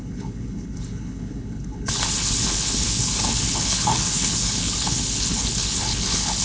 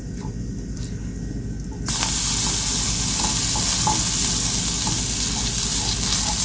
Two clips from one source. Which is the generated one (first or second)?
first